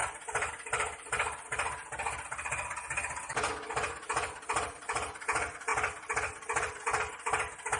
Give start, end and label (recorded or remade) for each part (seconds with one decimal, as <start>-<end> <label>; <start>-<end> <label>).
0.0-0.5 remade; 0.5-5.7 recorded; 5.7-6.8 remade; 6.8-7.8 recorded